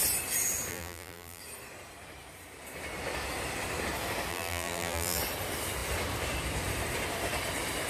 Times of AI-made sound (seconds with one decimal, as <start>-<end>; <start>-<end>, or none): 0.7-1.4; 4.3-5.2